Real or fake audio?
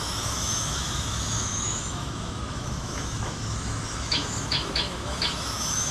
fake